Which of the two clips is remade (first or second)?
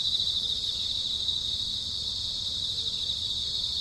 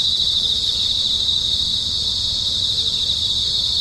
first